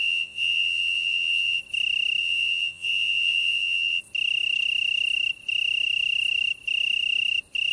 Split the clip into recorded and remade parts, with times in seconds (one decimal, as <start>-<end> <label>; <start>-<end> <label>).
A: 0.0-1.6 remade; 1.6-2.2 recorded; 2.2-4.0 remade; 4.0-7.7 recorded